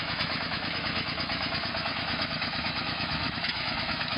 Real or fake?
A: fake